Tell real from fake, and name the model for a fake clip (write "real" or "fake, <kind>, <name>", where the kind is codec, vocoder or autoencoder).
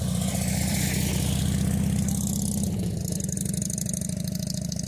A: real